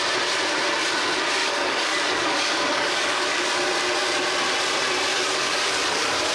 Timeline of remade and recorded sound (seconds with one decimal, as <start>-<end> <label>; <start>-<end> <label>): 0.0-1.4 recorded; 1.4-3.5 remade; 3.5-5.1 recorded; 5.1-6.3 remade